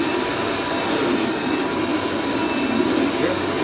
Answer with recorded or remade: recorded